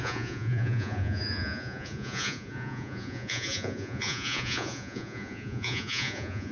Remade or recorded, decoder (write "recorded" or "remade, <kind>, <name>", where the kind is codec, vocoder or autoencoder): remade, vocoder, Vocos